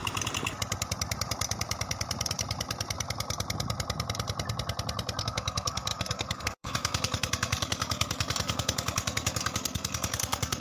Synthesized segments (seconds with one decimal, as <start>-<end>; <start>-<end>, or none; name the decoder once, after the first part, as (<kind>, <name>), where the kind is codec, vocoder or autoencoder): 5.2-10.6 (codec, SNAC)